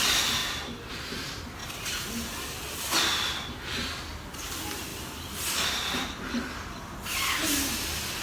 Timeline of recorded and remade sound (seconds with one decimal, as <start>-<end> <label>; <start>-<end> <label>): 0.0-8.2 recorded